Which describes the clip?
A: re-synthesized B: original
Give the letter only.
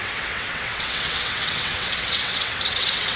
A